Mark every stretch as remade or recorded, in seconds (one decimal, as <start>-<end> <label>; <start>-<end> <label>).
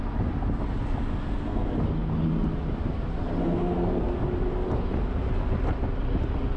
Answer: 0.0-1.1 recorded; 1.1-1.7 remade; 1.7-3.4 recorded; 3.4-4.2 remade; 4.2-6.6 recorded